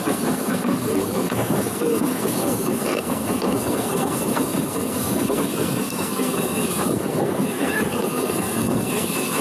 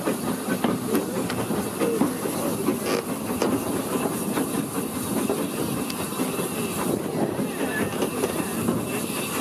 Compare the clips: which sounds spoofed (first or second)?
first